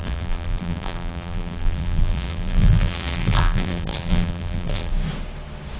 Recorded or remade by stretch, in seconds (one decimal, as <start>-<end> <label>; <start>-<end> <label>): 0.0-4.9 remade; 4.9-5.8 recorded